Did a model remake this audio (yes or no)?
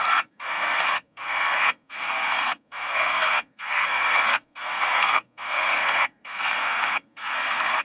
yes